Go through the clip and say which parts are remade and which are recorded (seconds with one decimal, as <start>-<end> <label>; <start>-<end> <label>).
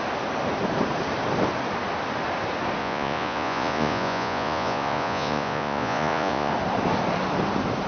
0.0-2.8 recorded; 2.8-6.5 remade; 6.5-7.9 recorded